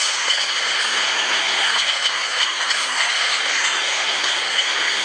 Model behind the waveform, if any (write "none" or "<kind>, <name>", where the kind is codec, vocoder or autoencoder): codec, SNAC